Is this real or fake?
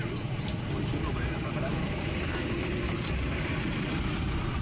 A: fake